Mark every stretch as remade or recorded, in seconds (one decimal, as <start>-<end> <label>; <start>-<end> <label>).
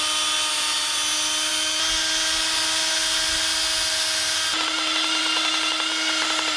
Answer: 0.0-6.6 recorded